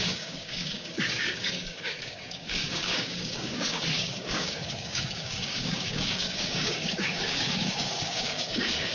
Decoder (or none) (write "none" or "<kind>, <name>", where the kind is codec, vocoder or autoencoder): codec, DAC